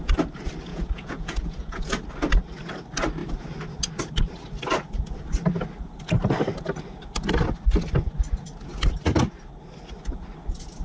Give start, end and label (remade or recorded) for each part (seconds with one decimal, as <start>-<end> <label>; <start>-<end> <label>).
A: 0.0-0.7 recorded; 0.7-1.9 remade; 1.9-10.8 recorded